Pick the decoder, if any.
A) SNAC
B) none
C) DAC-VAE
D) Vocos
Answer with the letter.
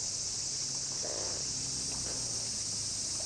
B